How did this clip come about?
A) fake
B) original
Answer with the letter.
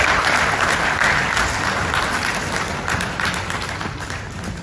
B